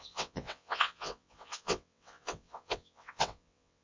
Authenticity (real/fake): fake